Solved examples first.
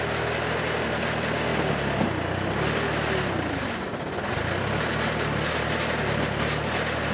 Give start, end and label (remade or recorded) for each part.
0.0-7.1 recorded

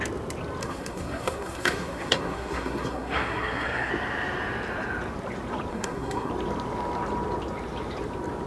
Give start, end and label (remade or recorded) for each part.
0.0-0.6 recorded; 0.6-3.9 remade; 3.9-5.7 recorded; 5.7-6.3 remade; 6.3-8.5 recorded

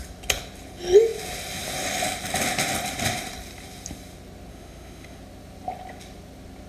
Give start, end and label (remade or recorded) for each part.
0.0-4.5 recorded; 4.5-5.2 remade; 5.2-6.7 recorded

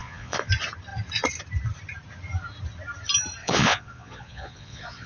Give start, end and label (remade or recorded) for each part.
0.0-0.5 remade; 0.5-3.4 recorded; 3.4-5.1 remade

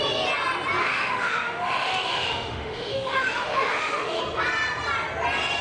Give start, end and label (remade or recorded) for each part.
0.0-0.8 recorded; 0.8-4.2 remade; 4.2-5.6 recorded

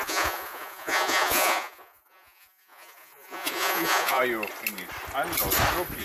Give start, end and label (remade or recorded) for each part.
0.0-4.2 remade; 4.2-6.0 recorded

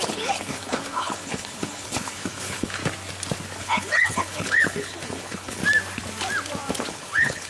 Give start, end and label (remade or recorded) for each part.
0.0-2.8 remade; 2.8-3.6 recorded; 3.6-5.6 remade; 5.6-6.9 recorded; 6.9-7.5 remade